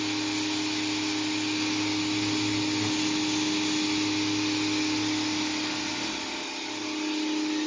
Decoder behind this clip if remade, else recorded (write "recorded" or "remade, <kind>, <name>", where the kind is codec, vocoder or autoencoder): recorded